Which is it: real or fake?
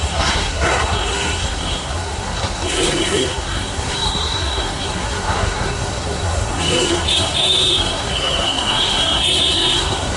fake